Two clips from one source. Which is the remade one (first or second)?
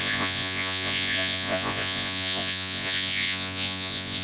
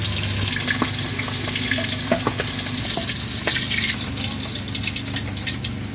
first